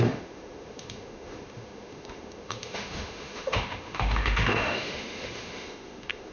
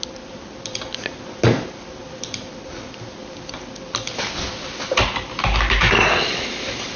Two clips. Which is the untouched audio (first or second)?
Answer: second